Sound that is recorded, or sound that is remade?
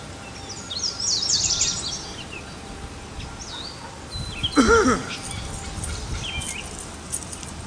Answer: recorded